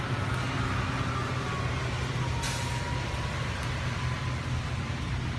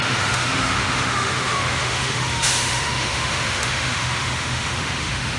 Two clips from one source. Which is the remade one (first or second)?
second